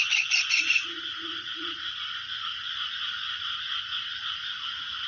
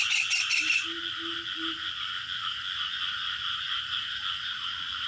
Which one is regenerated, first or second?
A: first